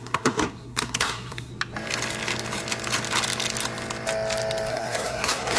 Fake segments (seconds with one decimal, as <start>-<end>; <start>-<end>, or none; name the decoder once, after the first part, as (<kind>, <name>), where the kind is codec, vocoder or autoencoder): 0.0-1.5 (codec, SNAC); 4.7-5.6